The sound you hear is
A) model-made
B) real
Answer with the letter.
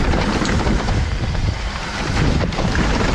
A